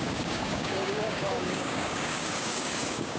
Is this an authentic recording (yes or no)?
no